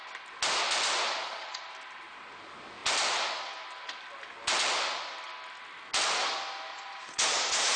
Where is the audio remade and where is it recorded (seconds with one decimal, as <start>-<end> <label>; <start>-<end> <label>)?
0.0-1.2 recorded; 1.2-1.7 remade; 1.7-6.7 recorded; 6.7-7.8 remade